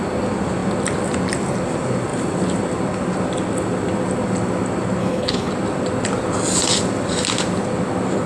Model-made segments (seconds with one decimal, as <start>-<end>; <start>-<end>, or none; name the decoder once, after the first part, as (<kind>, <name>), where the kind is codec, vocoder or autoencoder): 5.0-5.5 (codec, HILCodec)